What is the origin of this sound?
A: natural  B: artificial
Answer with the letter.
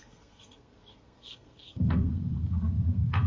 B